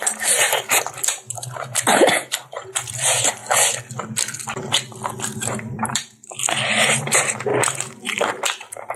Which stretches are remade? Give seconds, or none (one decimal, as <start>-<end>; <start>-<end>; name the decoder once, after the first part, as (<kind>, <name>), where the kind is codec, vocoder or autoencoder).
0.0-3.4 (vocoder, BigVGAN v2); 5.2-9.0